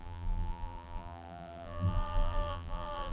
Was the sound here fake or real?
fake